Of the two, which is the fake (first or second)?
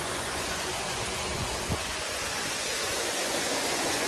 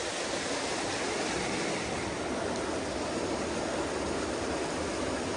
first